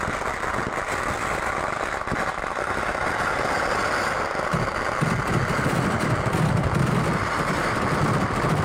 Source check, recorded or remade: recorded